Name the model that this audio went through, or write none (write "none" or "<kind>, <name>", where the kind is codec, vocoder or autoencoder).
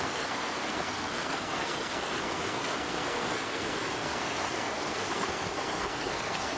codec, SNAC